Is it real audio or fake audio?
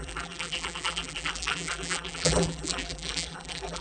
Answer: fake